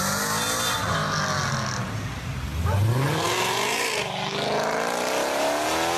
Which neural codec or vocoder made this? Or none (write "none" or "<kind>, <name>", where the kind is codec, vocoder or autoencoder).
none